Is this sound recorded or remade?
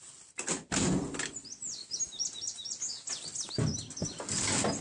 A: recorded